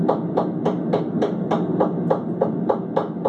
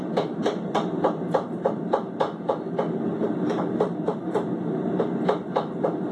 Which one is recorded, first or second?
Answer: first